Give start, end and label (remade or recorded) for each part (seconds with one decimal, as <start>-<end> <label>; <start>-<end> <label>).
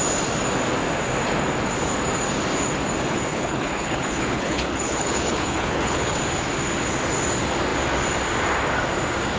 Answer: 0.0-3.3 recorded; 3.3-6.2 remade; 6.2-9.4 recorded